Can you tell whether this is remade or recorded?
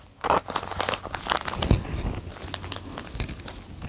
recorded